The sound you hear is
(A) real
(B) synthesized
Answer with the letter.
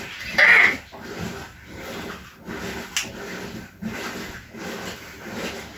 A